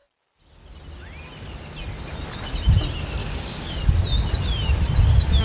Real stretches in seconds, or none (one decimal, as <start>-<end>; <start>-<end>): 0.0-3.2; 3.8-5.4